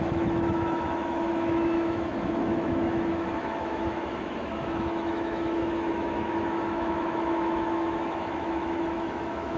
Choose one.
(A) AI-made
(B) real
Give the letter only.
A